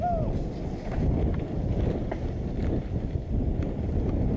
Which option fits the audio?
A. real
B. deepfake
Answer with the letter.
A